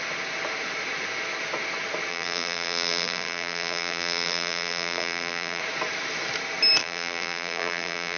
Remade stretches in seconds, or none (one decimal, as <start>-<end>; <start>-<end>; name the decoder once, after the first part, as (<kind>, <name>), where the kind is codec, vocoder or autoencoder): 2.1-5.6 (vocoder, BigVGAN v2); 6.8-8.2